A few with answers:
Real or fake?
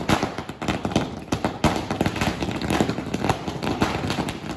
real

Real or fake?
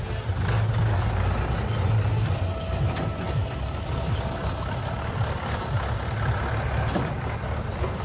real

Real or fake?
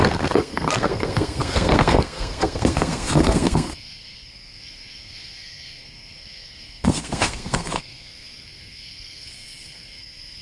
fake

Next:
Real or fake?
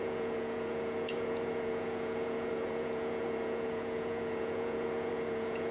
fake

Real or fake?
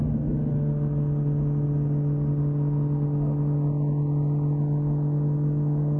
real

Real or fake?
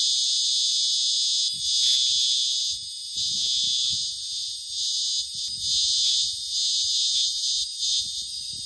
real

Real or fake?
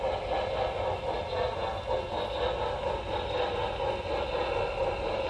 real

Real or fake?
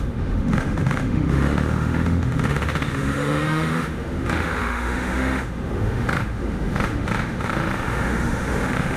fake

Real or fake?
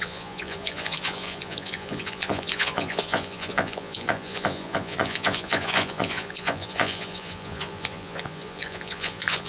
fake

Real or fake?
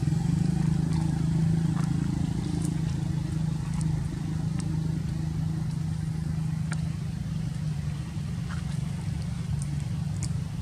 real